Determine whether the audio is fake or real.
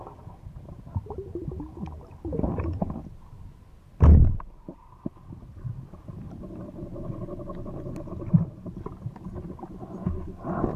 real